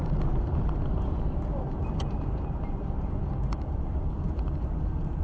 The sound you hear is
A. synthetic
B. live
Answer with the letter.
A